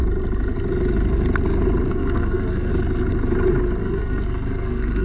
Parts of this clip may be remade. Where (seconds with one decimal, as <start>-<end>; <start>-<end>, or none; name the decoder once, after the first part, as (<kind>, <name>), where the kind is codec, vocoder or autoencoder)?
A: 1.9-2.7 (codec, SNAC); 3.8-5.0